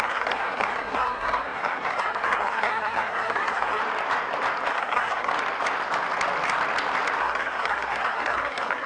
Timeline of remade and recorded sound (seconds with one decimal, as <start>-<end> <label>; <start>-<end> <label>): 0.0-3.8 remade; 3.8-4.7 recorded; 4.7-5.3 remade; 5.3-7.2 recorded; 7.2-8.9 remade